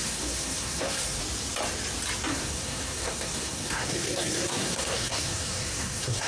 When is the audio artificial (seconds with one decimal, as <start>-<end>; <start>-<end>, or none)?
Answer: 0.0-1.2; 2.3-6.3